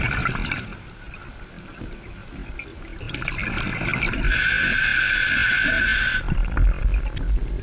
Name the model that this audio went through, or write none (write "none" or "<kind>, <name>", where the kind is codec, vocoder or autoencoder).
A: none